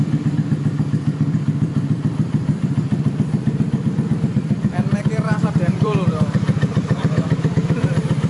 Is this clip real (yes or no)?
no